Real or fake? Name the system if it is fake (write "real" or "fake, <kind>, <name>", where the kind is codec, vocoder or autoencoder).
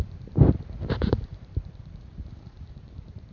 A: fake, vocoder, BigVGAN v2